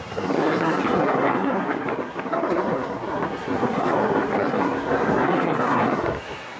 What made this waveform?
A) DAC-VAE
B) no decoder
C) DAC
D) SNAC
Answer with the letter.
D